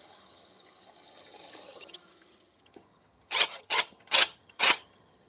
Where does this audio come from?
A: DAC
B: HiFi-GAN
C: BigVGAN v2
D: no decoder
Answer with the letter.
B